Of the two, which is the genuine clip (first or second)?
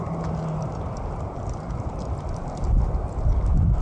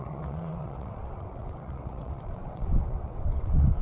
first